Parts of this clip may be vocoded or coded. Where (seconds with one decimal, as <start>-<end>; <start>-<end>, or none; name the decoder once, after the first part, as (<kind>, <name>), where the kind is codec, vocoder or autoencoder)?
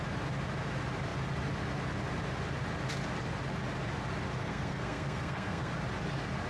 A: 4.4-5.7 (codec, SNAC)